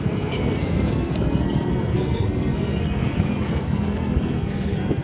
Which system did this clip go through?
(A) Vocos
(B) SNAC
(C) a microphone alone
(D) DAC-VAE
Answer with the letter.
B